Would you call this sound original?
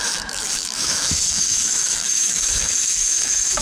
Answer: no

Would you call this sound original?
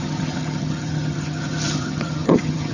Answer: no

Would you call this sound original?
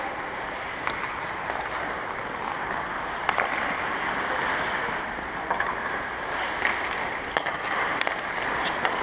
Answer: yes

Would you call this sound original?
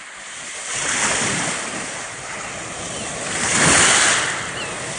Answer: yes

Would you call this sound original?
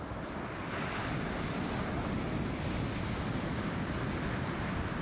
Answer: yes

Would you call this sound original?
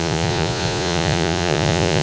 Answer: no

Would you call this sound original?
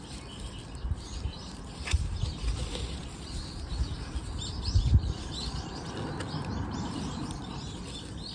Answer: yes